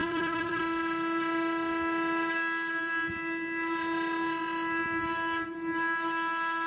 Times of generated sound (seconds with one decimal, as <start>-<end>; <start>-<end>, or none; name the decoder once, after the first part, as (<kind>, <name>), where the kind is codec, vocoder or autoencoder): 0.0-0.6 (vocoder, HiFi-GAN)